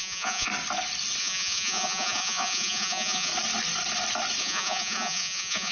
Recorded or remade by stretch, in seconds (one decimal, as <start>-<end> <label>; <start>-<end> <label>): 0.0-0.5 remade; 0.5-1.2 recorded; 1.2-3.3 remade; 3.3-4.4 recorded; 4.4-5.7 remade